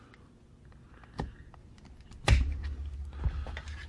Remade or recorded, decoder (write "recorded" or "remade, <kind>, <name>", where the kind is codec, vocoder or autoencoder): recorded